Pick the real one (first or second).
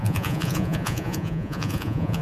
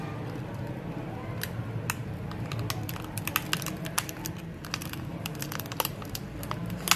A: second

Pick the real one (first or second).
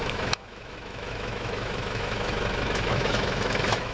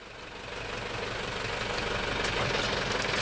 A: second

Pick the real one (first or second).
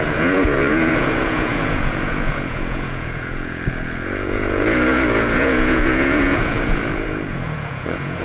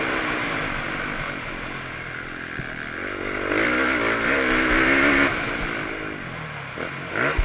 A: second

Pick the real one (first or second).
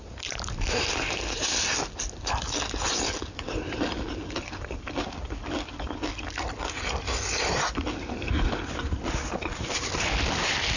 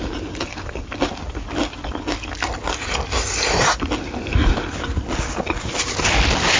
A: second